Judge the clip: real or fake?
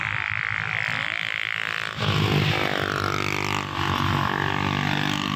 real